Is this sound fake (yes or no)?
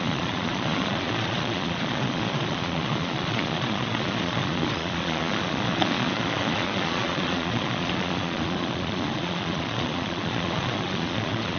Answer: yes